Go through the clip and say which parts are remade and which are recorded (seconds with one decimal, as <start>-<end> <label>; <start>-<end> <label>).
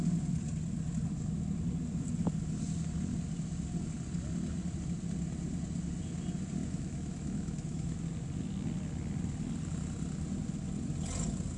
0.0-6.6 recorded; 6.6-8.0 remade; 8.0-11.6 recorded